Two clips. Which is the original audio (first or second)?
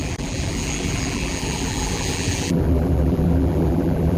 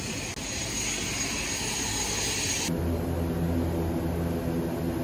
second